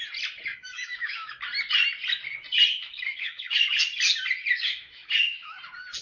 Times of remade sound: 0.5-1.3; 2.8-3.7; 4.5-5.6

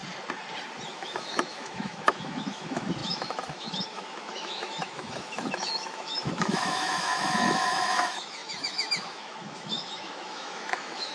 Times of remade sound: 0.9-11.1

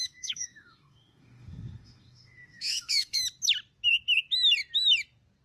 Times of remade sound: 0.0-3.2

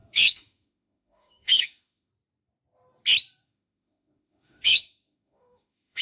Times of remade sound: 0.0-2.1; 3.4-6.0

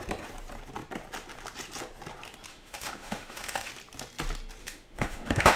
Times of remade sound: 2.5-3.7; 4.6-5.6

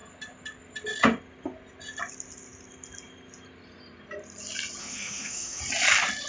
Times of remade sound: 4.8-5.6

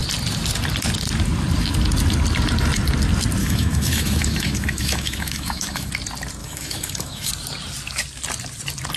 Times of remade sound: 3.4-5.9; 6.4-7.3

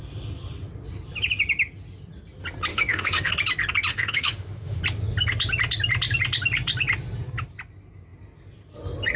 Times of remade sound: 2.7-3.3; 3.9-4.8